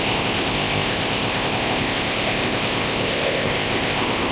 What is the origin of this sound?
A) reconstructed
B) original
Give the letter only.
A